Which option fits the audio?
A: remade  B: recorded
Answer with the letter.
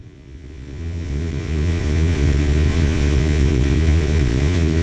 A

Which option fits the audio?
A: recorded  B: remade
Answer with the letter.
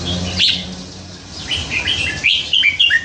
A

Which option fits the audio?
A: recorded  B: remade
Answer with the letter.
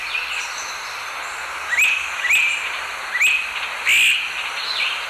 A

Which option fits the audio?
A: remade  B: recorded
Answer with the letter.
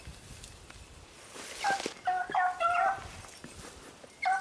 B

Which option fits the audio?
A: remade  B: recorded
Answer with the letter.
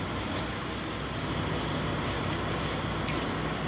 B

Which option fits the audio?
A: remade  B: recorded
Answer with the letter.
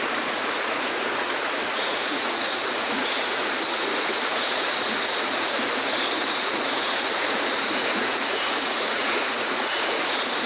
A